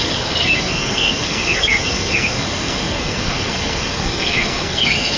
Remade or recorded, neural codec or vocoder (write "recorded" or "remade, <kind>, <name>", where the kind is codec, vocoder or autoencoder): remade, codec, SNAC